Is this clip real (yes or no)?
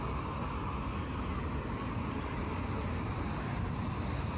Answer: yes